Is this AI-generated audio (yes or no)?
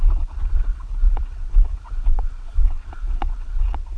yes